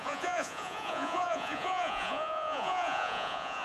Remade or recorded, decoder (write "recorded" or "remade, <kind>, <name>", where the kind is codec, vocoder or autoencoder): remade, vocoder, Vocos